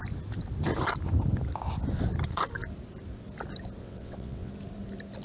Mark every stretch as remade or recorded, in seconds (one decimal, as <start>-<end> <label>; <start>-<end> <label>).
0.0-3.8 recorded; 3.8-4.5 remade; 4.5-5.2 recorded